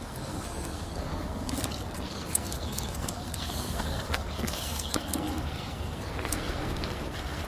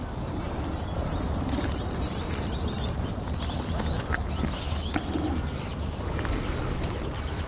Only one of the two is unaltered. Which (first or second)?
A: second